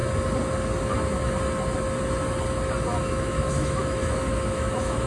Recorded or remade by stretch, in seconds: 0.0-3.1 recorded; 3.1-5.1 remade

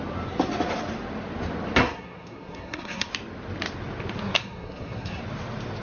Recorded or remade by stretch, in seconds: 0.0-1.8 recorded; 1.8-3.1 remade; 3.1-4.4 recorded; 4.4-5.2 remade; 5.2-5.8 recorded

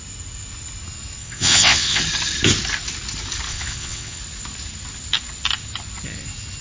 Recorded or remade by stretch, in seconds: 0.0-1.2 recorded; 1.2-2.0 remade; 2.0-3.5 recorded; 3.5-4.2 remade; 4.2-6.6 recorded

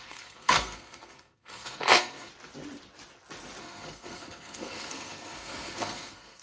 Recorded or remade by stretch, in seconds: 0.0-2.3 remade; 2.3-3.6 recorded; 3.6-6.4 remade

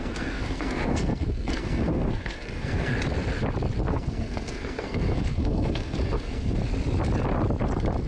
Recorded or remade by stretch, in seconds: 0.0-2.9 remade; 2.9-3.9 recorded; 3.9-6.6 remade; 6.6-8.1 recorded

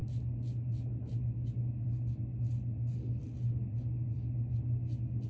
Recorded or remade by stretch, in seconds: 0.0-5.3 recorded

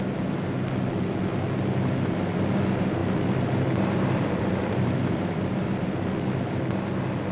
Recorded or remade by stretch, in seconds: 0.0-3.0 recorded; 3.0-6.6 remade; 6.6-7.3 recorded